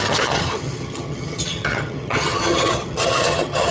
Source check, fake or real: fake